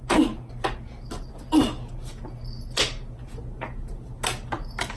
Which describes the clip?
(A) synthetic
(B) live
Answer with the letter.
B